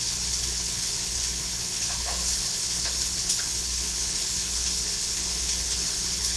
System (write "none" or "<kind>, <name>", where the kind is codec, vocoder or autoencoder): codec, HILCodec